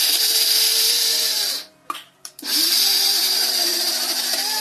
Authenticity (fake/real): fake